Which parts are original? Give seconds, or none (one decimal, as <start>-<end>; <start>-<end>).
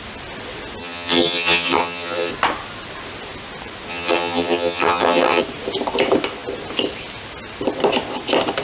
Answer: 0.0-0.8; 2.3-3.9; 5.4-8.6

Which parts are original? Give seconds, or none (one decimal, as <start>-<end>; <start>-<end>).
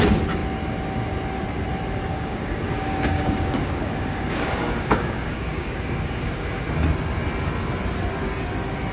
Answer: 0.0-2.1; 6.6-8.9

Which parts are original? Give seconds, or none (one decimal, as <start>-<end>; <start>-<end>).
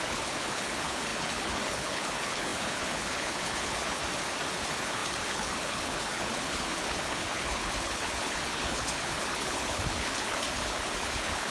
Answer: 4.0-4.5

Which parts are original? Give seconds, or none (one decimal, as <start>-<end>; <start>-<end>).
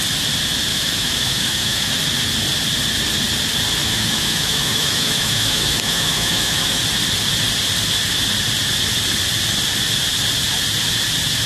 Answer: 0.0-0.7; 1.9-3.8; 6.8-11.5